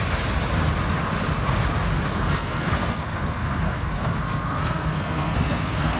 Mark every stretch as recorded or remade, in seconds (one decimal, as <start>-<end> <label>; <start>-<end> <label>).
0.0-2.1 recorded; 2.1-6.0 remade